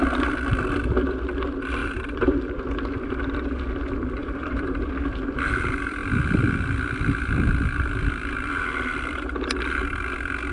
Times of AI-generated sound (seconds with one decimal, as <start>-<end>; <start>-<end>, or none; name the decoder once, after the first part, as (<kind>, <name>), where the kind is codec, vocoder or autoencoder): 1.8-2.6 (vocoder, BigVGAN v2); 4.2-4.9